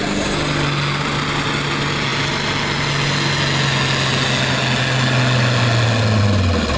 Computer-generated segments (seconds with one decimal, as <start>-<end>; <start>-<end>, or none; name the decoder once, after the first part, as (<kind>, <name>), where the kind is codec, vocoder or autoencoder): none